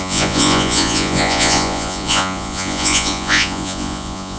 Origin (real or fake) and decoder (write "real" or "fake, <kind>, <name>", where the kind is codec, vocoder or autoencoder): fake, vocoder, Vocos